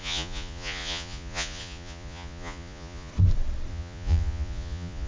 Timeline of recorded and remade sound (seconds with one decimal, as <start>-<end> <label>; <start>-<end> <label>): 0.0-3.1 remade; 3.1-3.7 recorded; 3.7-5.1 remade